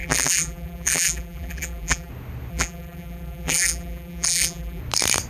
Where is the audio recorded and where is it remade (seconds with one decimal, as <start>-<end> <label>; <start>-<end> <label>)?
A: 0.0-2.1 remade; 2.1-2.5 recorded; 2.5-4.8 remade; 4.8-5.3 recorded